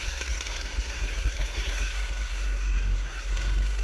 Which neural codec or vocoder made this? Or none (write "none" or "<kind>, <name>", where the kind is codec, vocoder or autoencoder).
codec, SNAC